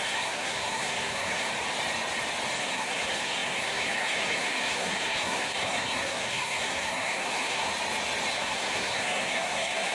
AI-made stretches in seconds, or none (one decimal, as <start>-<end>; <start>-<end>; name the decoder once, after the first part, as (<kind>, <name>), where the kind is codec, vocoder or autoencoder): 0.0-1.5 (codec, SNAC); 2.6-7.7; 8.3-9.9